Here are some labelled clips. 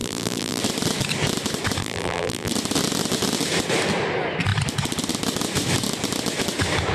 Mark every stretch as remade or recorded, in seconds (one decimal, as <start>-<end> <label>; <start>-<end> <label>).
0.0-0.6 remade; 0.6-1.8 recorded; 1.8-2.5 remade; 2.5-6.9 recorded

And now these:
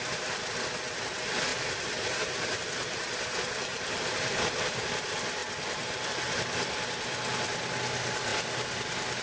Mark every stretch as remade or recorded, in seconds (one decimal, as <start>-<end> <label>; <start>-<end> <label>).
0.0-1.5 recorded; 1.5-2.6 remade; 2.6-3.7 recorded; 3.7-4.9 remade; 4.9-9.2 recorded

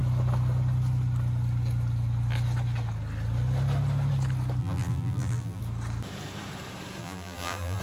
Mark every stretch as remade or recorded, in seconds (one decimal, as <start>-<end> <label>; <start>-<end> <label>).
0.0-4.6 recorded; 4.6-5.6 remade; 5.6-7.0 recorded; 7.0-7.8 remade